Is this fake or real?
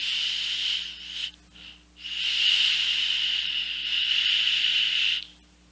real